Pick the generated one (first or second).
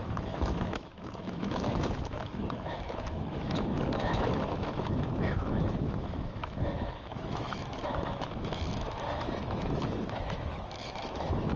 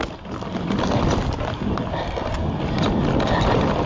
first